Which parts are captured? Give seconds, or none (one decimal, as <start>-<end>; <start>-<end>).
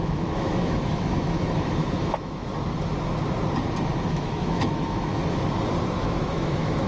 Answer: 2.4-4.1; 5.1-6.0